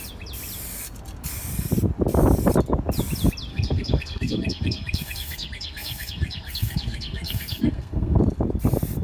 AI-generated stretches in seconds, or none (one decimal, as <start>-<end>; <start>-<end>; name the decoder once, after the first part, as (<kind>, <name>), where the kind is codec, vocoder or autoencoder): 3.5-8.2 (codec, SNAC)

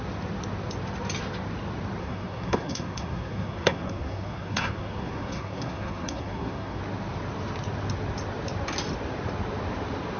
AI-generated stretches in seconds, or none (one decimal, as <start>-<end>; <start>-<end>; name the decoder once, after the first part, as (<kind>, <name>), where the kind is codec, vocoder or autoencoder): 2.0-6.8 (codec, SNAC)

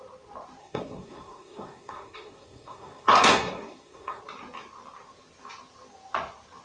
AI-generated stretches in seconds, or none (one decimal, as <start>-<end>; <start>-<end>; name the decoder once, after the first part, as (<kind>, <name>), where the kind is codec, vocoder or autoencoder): 0.6-4.2 (codec, SNAC)

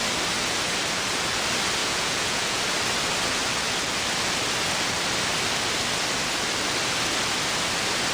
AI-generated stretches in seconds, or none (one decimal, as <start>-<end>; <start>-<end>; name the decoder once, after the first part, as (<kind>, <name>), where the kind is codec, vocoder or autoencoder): 1.8-2.6 (vocoder, Vocos)